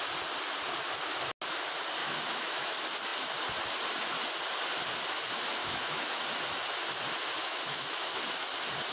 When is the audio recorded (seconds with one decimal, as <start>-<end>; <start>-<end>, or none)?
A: 0.0-2.0; 2.7-5.6; 6.2-7.4; 8.2-8.9